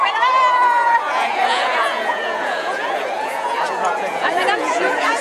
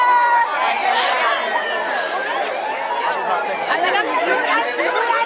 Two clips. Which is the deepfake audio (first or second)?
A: first